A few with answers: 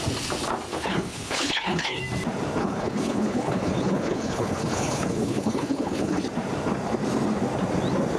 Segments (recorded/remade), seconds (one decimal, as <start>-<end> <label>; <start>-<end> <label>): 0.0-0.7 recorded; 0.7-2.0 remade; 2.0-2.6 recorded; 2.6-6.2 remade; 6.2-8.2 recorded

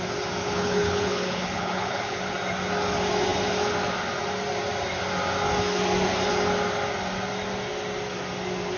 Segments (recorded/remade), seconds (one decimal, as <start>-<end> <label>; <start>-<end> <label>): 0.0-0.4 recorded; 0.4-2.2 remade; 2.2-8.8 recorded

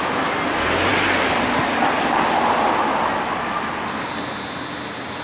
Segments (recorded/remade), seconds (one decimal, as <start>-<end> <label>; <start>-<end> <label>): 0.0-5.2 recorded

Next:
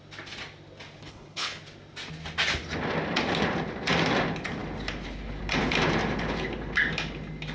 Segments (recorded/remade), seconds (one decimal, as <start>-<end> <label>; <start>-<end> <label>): 0.0-1.0 recorded; 1.0-1.6 remade; 1.6-7.5 recorded

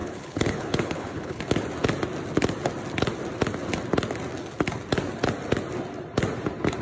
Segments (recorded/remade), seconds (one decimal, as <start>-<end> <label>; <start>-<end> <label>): 0.0-1.4 remade; 1.4-6.8 recorded

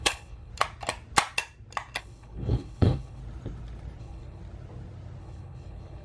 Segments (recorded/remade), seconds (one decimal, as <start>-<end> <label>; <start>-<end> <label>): 0.0-0.5 remade; 0.5-2.0 recorded; 2.0-3.2 remade; 3.2-4.0 recorded; 4.0-4.4 remade; 4.4-5.2 recorded; 5.2-6.0 remade

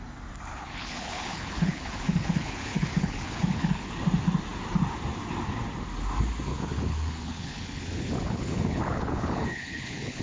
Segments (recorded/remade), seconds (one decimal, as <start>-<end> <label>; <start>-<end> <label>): 0.0-0.5 recorded; 0.5-4.0 remade; 4.0-6.5 recorded; 6.5-10.2 remade

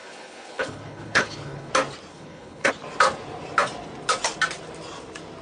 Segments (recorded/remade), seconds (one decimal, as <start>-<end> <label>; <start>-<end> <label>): 0.0-1.7 remade; 1.7-2.1 recorded; 2.1-2.7 remade; 2.7-5.4 recorded